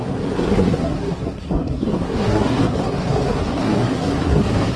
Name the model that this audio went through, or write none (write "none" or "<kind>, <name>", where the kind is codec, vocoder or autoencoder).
codec, SNAC